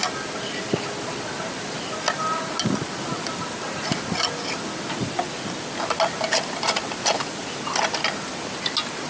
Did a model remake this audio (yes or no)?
no